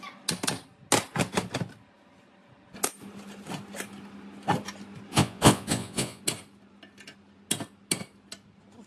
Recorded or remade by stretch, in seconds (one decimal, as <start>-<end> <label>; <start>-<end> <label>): 0.0-5.1 recorded; 5.1-6.2 remade; 6.2-8.9 recorded

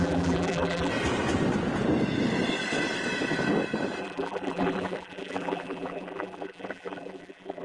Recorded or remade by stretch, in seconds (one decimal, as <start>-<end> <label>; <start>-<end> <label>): 0.0-0.9 remade; 0.9-4.0 recorded; 4.0-7.6 remade

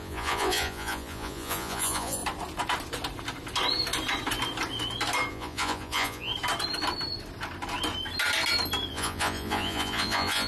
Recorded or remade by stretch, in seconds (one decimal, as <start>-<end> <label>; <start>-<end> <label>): 0.0-2.2 remade; 2.2-5.3 recorded; 5.3-6.3 remade; 6.3-8.9 recorded; 8.9-10.5 remade

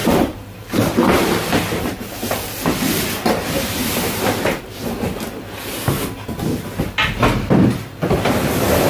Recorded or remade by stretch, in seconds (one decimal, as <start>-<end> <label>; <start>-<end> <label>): 0.0-4.6 remade; 4.6-8.9 recorded

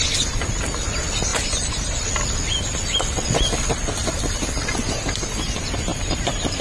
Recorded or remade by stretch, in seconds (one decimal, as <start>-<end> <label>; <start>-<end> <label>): 0.0-1.3 recorded; 1.3-2.0 remade; 2.0-5.9 recorded; 5.9-6.6 remade

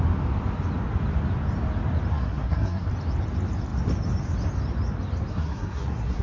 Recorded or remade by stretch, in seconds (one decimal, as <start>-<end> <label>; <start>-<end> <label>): 0.0-2.1 recorded; 2.1-2.9 remade; 2.9-5.3 recorded; 5.3-6.2 remade

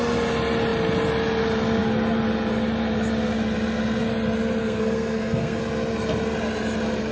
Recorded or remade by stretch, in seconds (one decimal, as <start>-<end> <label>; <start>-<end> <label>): 0.0-4.6 recorded; 4.6-5.6 remade; 5.6-7.1 recorded

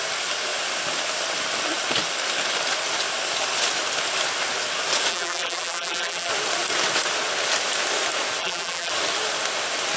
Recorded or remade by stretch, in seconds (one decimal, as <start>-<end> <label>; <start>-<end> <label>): 0.0-5.1 recorded; 5.1-6.3 remade; 6.3-8.4 recorded; 8.4-8.9 remade; 8.9-10.0 recorded